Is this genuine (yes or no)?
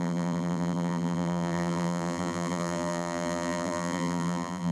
no